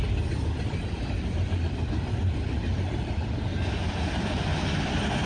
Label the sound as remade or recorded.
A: recorded